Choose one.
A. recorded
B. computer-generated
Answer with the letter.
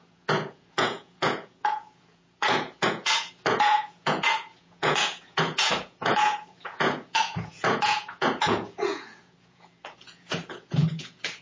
B